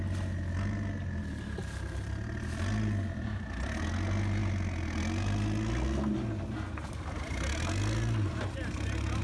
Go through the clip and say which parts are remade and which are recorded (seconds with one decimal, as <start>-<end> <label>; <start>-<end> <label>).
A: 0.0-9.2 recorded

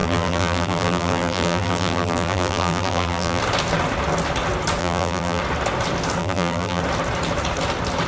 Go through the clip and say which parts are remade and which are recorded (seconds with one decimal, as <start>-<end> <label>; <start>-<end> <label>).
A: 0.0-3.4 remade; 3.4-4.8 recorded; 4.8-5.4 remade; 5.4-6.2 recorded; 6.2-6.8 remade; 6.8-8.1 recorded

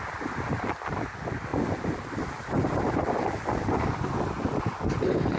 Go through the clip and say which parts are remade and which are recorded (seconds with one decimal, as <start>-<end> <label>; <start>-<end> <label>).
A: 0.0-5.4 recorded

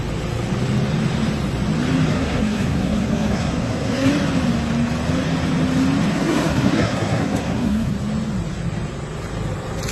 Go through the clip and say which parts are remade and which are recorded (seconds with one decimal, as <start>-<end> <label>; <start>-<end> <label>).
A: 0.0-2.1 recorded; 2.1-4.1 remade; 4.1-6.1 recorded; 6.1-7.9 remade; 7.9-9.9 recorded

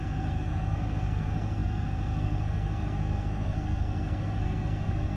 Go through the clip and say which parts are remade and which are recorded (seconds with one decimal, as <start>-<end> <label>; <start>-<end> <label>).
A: 0.0-5.2 remade

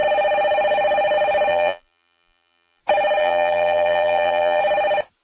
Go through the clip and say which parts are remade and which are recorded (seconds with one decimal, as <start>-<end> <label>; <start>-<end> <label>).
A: 0.0-1.5 recorded; 1.5-2.8 remade; 2.8-3.2 recorded; 3.2-4.6 remade; 4.6-5.2 recorded

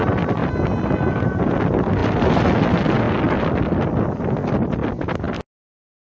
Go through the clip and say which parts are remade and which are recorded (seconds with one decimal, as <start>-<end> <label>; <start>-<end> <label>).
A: 0.0-6.1 recorded